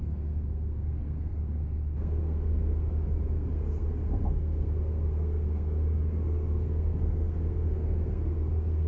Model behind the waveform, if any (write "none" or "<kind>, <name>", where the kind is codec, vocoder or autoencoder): codec, SNAC